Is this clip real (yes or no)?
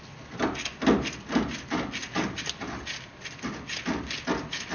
yes